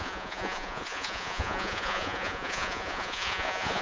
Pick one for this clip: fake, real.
fake